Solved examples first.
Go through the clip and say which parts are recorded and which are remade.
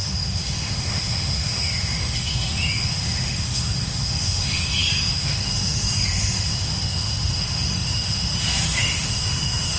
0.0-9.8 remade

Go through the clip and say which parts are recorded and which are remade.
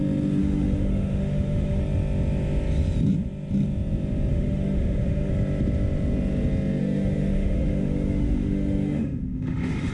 0.0-0.4 recorded; 0.4-1.8 remade; 1.8-4.3 recorded; 4.3-5.3 remade; 5.3-6.8 recorded; 6.8-9.9 remade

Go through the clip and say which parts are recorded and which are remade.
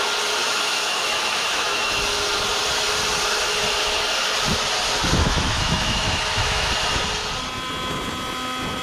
0.0-0.4 recorded; 0.4-1.9 remade; 1.9-5.2 recorded; 5.2-6.7 remade; 6.7-8.8 recorded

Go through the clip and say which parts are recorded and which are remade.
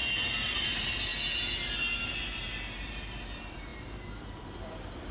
0.0-0.6 recorded; 0.6-1.1 remade; 1.1-2.1 recorded; 2.1-5.1 remade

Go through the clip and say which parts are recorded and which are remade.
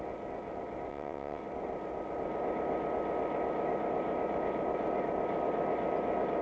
0.0-0.9 recorded; 0.9-1.4 remade; 1.4-6.4 recorded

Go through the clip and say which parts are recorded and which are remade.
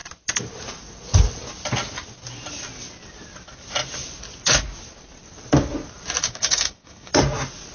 0.0-6.2 recorded; 6.2-7.1 remade; 7.1-7.7 recorded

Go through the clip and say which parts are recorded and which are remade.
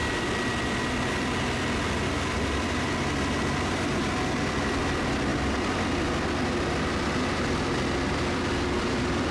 0.0-9.3 recorded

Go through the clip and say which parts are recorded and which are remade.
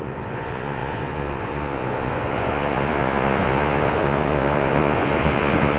0.0-5.8 remade